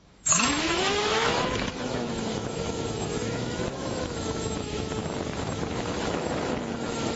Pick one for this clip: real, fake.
fake